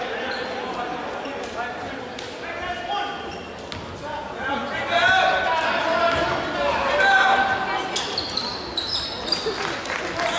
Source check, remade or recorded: recorded